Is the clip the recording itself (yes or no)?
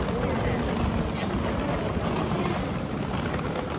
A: yes